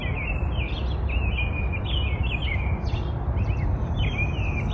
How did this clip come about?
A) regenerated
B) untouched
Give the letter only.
B